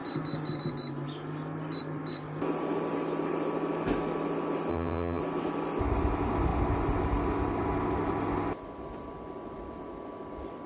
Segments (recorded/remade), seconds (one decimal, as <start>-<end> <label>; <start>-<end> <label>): 0.0-4.7 recorded; 4.7-5.2 remade; 5.2-10.7 recorded